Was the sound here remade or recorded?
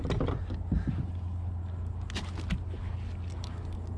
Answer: recorded